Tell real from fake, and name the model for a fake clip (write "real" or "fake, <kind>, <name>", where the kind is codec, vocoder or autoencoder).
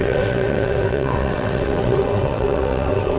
fake, vocoder, WaveNeXt